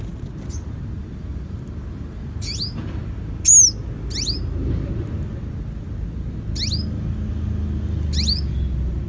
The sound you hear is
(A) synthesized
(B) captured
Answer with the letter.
B